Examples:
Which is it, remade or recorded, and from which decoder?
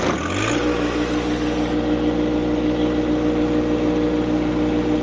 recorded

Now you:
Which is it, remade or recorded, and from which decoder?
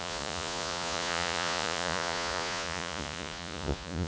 remade, vocoder, Vocos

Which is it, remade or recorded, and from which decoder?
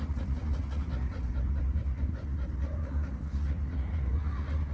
remade, vocoder, Vocos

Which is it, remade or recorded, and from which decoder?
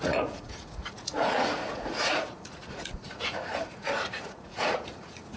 remade, vocoder, Vocos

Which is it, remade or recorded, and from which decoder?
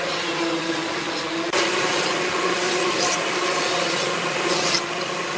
recorded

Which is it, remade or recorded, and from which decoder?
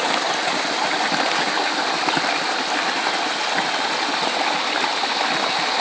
recorded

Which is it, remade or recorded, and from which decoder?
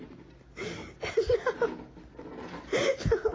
recorded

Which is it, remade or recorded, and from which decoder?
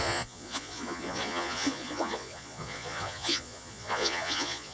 remade, vocoder, Vocos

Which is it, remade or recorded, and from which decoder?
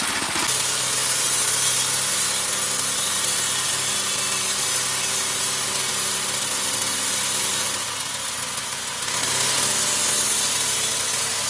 recorded